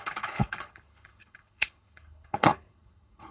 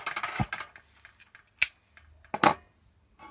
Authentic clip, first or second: second